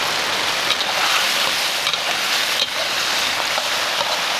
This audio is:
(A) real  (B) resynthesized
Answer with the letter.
B